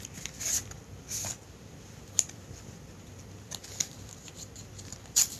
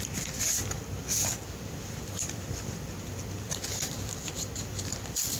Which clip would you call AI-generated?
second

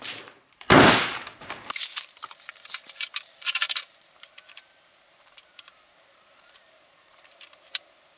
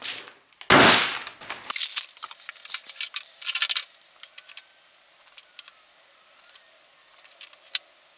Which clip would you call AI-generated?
first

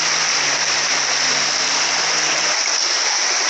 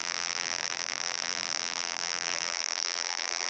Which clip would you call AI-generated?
second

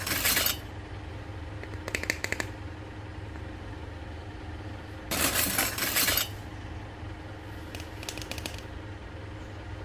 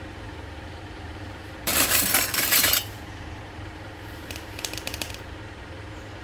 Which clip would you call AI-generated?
second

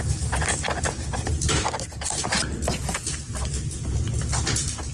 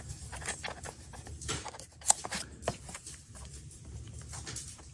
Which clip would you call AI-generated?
second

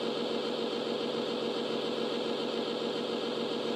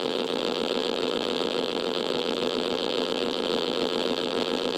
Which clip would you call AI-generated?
second